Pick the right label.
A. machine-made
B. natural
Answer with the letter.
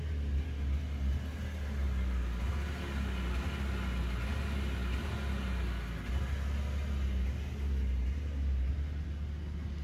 B